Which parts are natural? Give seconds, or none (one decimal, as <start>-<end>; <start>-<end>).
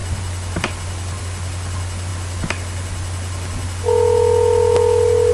0.0-5.3